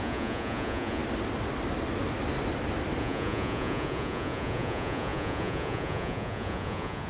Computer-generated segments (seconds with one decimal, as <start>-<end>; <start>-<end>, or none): 0.0-1.0; 3.0-7.1